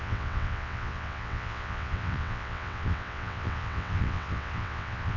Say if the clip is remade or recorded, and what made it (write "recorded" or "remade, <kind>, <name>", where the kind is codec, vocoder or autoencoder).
remade, vocoder, WaveNeXt